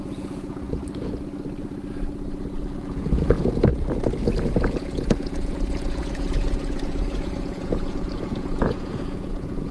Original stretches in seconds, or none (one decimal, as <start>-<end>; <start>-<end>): 0.8-2.8; 3.7-4.4